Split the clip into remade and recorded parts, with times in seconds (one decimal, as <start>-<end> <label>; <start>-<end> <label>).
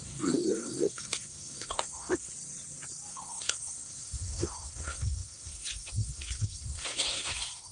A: 0.0-2.3 remade; 2.3-3.1 recorded; 3.1-7.7 remade